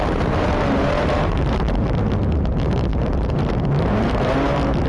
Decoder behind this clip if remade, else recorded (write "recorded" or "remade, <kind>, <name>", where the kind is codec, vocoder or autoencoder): remade, vocoder, BigVGAN v2